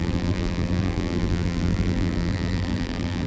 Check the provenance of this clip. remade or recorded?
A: remade